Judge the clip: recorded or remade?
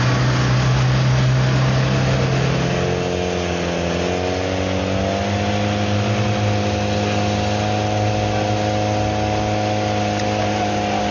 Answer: recorded